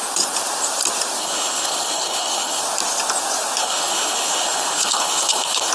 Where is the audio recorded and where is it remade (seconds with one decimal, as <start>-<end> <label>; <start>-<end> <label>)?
0.0-1.2 recorded; 1.2-2.6 remade; 2.6-3.6 recorded; 3.6-5.7 remade